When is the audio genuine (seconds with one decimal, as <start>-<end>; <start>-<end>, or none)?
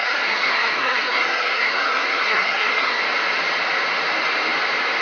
3.0-5.0